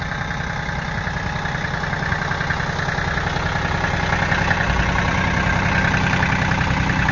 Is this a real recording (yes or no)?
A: yes